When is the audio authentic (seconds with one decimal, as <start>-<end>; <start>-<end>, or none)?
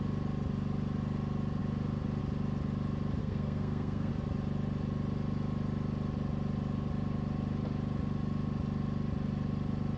0.0-3.2; 4.1-10.0